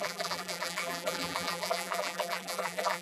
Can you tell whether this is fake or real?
fake